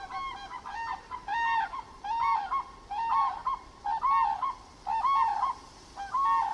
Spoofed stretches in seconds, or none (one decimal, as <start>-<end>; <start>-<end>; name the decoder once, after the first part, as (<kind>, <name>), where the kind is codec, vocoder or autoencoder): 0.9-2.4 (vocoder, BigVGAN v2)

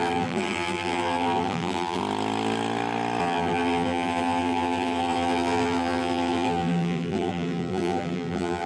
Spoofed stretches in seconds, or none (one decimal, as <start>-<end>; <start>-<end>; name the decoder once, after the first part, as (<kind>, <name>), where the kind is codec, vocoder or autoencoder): 0.0-2.0 (vocoder, BigVGAN v2); 3.2-8.7

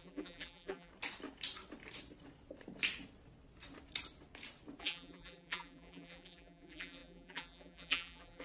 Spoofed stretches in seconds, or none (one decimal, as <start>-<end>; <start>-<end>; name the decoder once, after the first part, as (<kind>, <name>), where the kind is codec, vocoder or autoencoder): 0.0-0.9 (vocoder, BigVGAN v2); 4.8-8.4